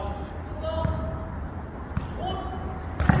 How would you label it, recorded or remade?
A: recorded